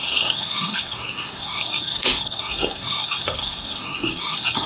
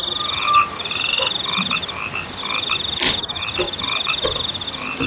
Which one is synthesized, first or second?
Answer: first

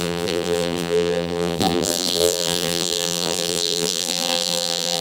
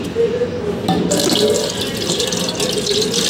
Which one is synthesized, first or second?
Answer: first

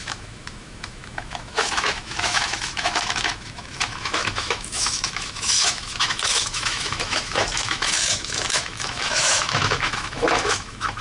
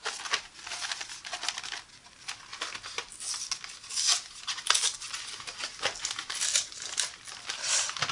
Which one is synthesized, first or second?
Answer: first